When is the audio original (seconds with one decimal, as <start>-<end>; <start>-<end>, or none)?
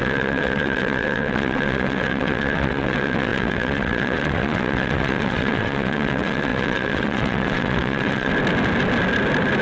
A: 8.3-9.6